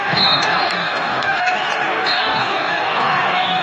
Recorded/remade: remade